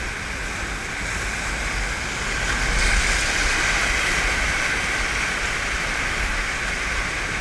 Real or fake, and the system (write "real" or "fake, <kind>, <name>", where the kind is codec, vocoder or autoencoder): real